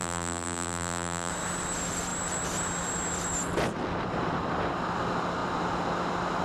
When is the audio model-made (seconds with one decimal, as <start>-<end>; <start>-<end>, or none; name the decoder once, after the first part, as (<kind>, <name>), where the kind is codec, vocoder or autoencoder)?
0.0-1.3 (vocoder, BigVGAN v2)